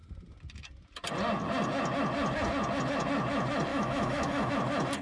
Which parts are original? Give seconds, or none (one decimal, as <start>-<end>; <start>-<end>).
0.0-3.7; 4.5-5.0